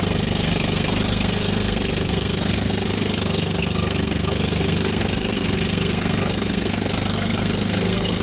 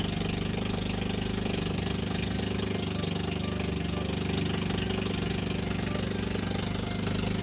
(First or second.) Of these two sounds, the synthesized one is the first